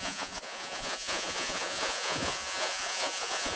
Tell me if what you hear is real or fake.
fake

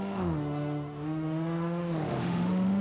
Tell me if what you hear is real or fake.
fake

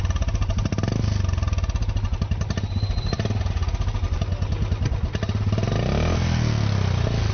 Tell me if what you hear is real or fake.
real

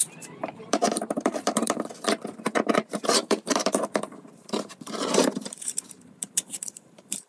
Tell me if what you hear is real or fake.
fake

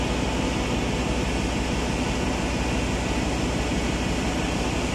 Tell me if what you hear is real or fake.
real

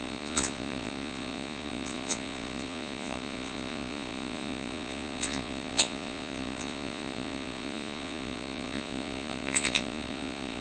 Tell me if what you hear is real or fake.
fake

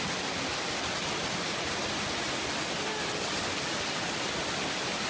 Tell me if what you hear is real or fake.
real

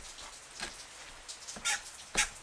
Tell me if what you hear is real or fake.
real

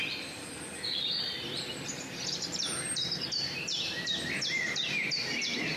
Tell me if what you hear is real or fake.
fake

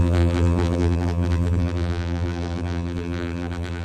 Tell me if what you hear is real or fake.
fake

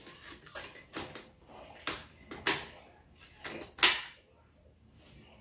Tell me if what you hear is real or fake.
real